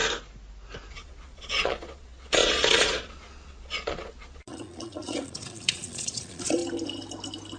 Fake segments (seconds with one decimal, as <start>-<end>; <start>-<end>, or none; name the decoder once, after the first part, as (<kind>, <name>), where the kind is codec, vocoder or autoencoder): 0.9-6.6 (vocoder, Vocos)